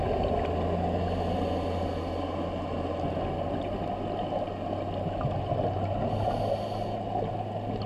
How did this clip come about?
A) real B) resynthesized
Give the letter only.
A